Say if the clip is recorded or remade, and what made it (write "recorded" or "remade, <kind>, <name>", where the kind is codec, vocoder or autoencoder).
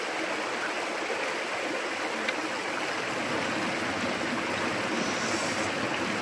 recorded